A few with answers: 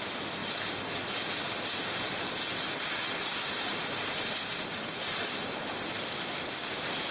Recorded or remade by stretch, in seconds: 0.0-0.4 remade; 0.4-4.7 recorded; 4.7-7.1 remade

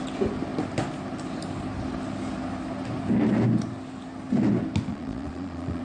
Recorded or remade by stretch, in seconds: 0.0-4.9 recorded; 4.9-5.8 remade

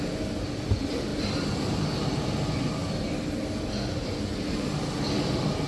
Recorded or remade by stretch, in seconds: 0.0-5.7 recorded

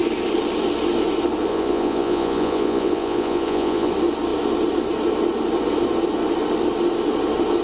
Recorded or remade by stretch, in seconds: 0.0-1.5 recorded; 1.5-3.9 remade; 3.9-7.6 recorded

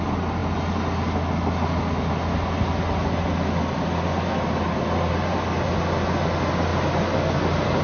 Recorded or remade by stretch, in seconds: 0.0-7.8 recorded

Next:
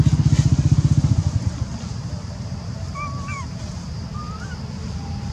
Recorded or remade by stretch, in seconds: 0.0-1.7 recorded; 1.7-5.3 remade